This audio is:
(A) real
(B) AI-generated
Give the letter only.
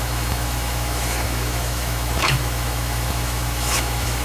B